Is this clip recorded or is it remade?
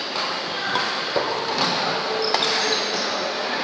recorded